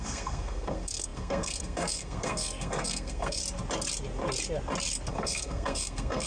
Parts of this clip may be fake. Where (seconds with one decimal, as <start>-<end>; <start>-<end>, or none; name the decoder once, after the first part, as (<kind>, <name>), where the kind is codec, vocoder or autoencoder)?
0.0-3.4 (codec, SNAC); 5.1-6.3